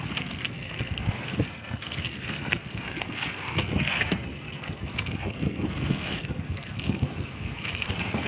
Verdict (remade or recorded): remade